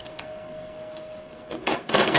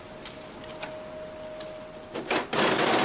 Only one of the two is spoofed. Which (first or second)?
first